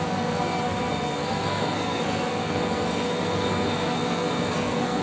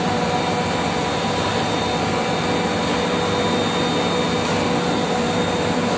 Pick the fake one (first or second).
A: first